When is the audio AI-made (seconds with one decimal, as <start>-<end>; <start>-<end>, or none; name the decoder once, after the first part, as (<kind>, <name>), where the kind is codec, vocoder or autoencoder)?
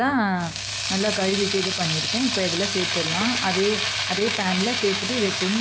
0.0-0.7 (codec, DAC); 4.1-5.6